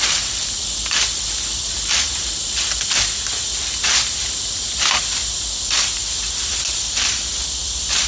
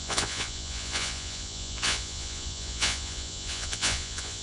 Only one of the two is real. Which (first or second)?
first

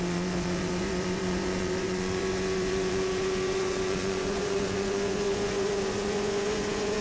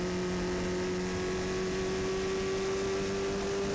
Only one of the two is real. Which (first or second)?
second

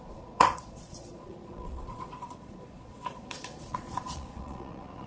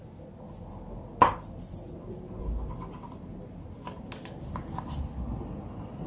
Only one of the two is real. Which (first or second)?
second